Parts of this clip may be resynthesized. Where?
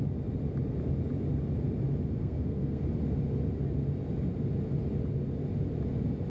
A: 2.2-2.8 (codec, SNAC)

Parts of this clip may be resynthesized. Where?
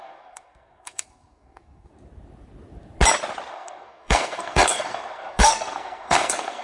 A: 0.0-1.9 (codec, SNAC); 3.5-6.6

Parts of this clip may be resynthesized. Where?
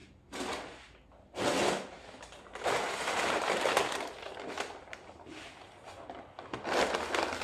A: none